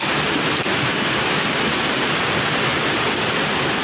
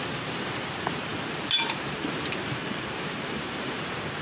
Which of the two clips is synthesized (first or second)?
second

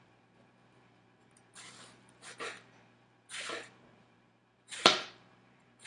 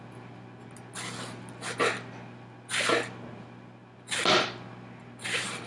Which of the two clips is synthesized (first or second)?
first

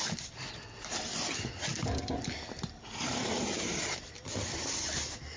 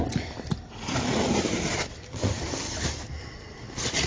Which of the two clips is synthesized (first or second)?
second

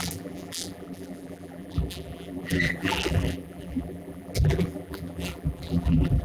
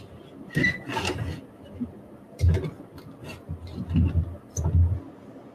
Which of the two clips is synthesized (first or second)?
first